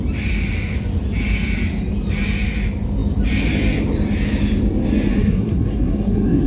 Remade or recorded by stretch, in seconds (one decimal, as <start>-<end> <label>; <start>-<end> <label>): 0.0-5.1 recorded; 5.1-6.5 remade

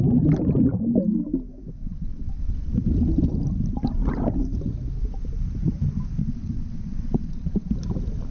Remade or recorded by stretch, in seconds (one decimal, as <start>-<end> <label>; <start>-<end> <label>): 0.0-1.8 recorded; 1.8-2.7 remade; 2.7-6.2 recorded; 6.2-7.7 remade; 7.7-8.3 recorded

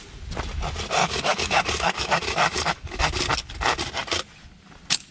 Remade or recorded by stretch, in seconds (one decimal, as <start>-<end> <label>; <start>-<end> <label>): 0.0-1.0 recorded; 1.0-3.0 remade; 3.0-5.1 recorded

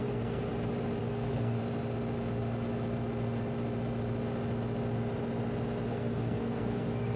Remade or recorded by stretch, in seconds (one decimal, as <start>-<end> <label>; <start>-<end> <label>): 0.0-0.5 remade; 0.5-1.0 recorded; 1.0-1.6 remade; 1.6-5.9 recorded; 5.9-7.2 remade